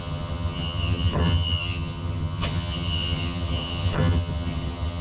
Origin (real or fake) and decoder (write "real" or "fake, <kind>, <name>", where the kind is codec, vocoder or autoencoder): fake, vocoder, HiFi-GAN